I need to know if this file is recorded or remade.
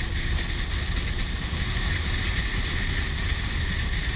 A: recorded